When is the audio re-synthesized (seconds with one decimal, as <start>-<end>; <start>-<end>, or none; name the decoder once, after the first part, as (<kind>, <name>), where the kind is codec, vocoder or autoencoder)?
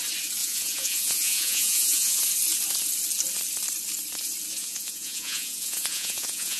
0.4-2.2 (vocoder, Vocos); 4.6-6.6